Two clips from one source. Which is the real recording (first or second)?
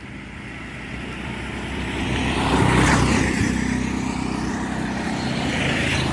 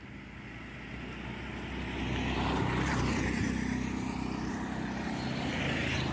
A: second